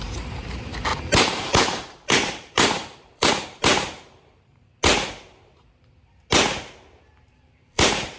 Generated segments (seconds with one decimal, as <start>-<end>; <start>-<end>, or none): 0.0-4.7; 7.3-8.2